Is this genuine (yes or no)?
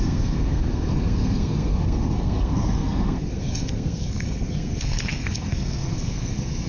no